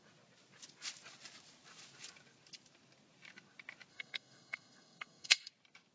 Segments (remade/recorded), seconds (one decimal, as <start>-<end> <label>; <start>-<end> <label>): 0.0-3.9 recorded; 3.9-5.5 remade; 5.5-5.9 recorded